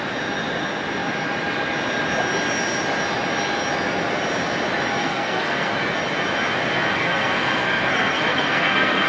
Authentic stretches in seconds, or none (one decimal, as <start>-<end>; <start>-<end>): 0.0-5.0; 5.7-6.9